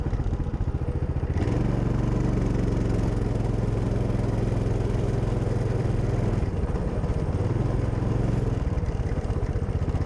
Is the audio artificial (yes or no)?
no